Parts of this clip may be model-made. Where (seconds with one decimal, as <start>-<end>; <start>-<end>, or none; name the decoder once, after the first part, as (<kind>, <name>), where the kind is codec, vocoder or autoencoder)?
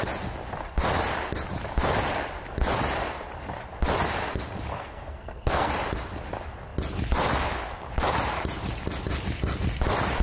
4.7-5.7 (codec, SNAC)